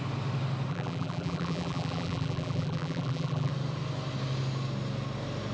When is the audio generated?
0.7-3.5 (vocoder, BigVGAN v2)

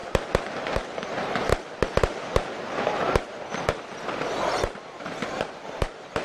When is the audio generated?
0.6-1.5 (vocoder, BigVGAN v2); 4.6-6.2

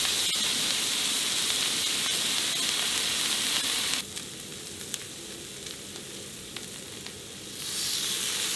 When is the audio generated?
none

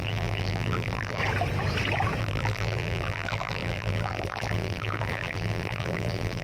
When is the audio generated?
0.0-1.2 (vocoder, BigVGAN v2); 2.2-6.4

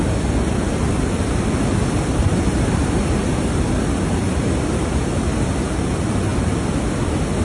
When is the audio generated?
2.3-3.0 (vocoder, BigVGAN v2)

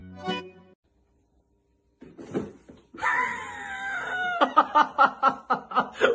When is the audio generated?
none